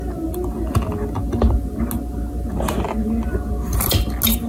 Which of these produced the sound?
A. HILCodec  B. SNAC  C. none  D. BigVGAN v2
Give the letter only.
C